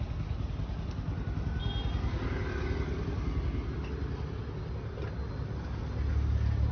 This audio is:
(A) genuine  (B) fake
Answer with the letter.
A